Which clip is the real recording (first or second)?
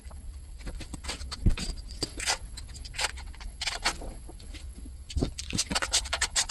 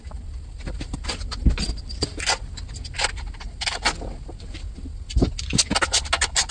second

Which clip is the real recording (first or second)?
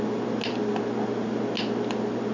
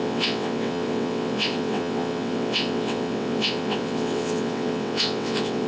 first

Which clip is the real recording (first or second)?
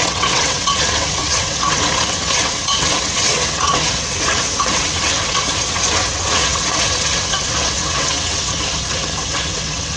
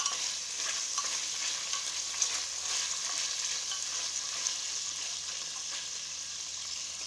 second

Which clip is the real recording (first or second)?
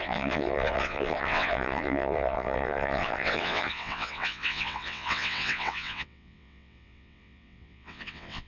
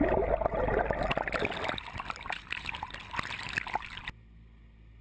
second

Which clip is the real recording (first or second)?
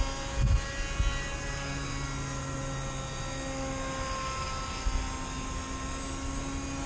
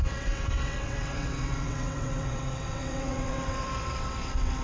first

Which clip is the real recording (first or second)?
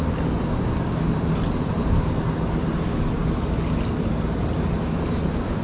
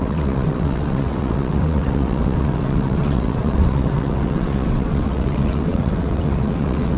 first